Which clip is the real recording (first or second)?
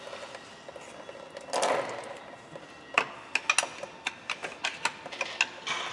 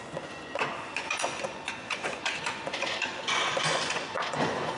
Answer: first